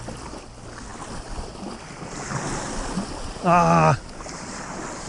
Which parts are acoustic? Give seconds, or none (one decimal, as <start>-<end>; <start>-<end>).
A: 0.0-5.1